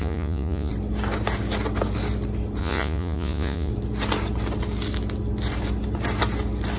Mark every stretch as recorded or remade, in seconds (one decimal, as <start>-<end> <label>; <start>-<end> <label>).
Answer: 0.0-0.7 remade; 0.7-2.6 recorded; 2.6-3.7 remade; 3.7-6.8 recorded